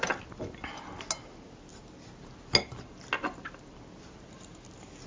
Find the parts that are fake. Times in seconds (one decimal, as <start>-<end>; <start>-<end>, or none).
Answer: none